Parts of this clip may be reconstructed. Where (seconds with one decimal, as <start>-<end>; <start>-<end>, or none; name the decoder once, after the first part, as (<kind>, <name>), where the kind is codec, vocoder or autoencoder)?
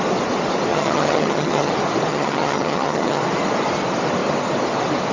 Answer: 0.7-1.7 (vocoder, HiFi-GAN); 2.1-3.2